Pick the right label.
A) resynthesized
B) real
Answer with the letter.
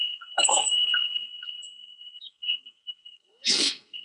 A